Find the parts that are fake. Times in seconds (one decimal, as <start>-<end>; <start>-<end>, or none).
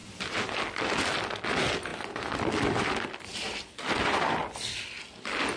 none